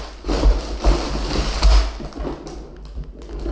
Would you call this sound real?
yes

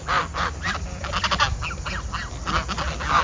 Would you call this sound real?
yes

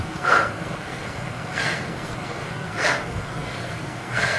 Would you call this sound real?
no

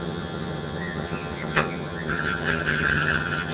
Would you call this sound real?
no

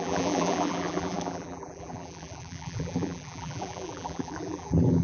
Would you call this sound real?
no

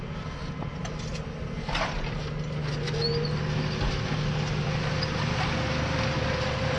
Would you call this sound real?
yes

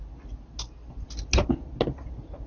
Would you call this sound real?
yes